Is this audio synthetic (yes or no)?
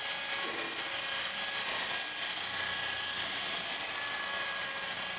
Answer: no